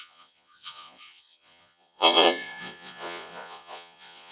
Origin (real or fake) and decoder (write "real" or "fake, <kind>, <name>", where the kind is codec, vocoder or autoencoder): fake, vocoder, Vocos